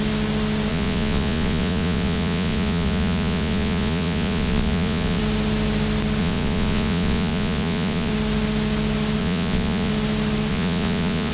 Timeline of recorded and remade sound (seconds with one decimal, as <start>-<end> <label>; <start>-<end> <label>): 0.0-0.7 recorded; 0.7-5.2 remade; 5.2-6.2 recorded; 6.2-8.1 remade; 8.1-9.2 recorded; 9.2-9.9 remade; 9.9-10.5 recorded; 10.5-11.3 remade